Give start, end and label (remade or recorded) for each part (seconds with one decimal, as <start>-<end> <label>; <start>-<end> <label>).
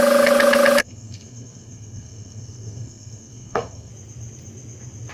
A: 0.0-0.8 recorded; 0.8-3.9 remade; 3.9-5.1 recorded